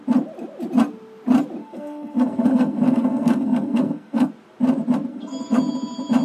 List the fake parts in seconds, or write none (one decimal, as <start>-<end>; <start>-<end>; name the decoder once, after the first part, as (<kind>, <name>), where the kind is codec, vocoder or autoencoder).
1.6-4.3 (codec, SNAC); 5.1-5.6